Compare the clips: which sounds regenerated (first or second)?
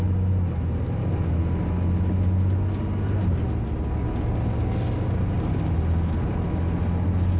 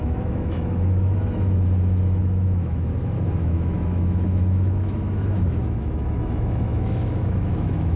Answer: second